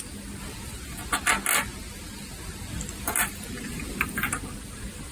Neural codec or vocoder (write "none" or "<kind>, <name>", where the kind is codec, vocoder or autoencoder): none